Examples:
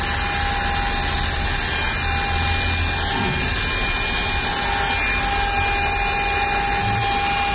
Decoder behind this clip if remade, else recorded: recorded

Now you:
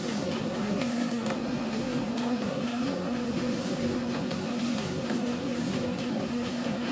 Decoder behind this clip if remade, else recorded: remade, codec, SNAC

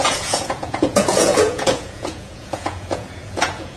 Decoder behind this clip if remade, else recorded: remade, vocoder, Vocos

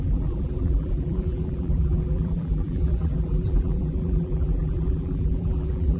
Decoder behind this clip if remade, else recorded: remade, vocoder, BigVGAN v2